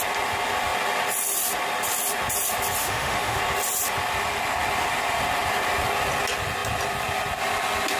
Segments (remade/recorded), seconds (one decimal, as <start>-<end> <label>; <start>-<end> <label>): 0.0-2.8 recorded; 2.8-3.4 remade; 3.4-8.0 recorded